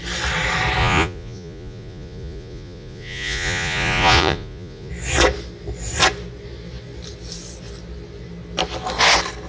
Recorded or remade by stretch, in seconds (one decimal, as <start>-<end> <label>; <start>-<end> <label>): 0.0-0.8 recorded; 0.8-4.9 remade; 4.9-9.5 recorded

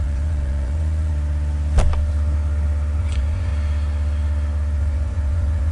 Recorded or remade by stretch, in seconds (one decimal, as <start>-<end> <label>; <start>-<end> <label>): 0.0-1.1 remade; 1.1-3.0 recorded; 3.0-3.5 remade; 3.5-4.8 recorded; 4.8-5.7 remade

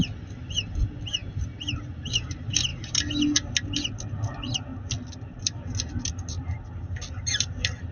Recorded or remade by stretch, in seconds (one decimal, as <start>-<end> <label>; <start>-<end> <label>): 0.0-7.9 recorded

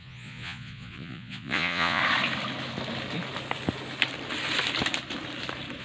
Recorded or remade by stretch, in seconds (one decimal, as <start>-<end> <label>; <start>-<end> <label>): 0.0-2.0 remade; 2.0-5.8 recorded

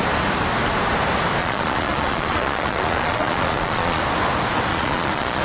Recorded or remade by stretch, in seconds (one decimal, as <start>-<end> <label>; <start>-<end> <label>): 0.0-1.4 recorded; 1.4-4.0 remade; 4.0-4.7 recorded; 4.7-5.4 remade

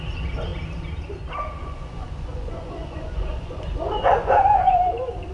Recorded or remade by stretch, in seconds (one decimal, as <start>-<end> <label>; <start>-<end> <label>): 0.0-1.6 recorded; 1.6-4.8 remade; 4.8-5.3 recorded